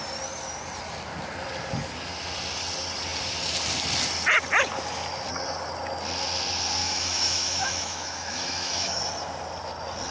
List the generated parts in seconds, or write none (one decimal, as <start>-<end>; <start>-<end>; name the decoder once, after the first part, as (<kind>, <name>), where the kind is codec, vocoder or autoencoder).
6.8-9.0 (autoencoder, DAC-VAE)